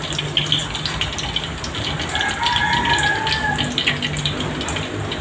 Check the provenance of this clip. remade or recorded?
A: recorded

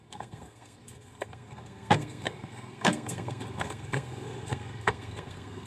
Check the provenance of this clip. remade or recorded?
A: remade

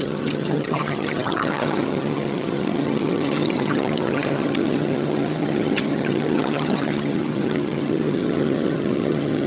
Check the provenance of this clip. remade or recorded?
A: remade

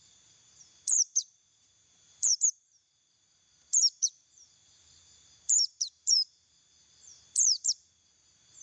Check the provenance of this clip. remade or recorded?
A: remade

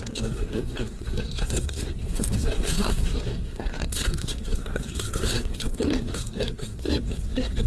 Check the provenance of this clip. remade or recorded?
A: remade